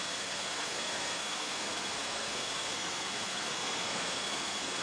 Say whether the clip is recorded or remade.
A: remade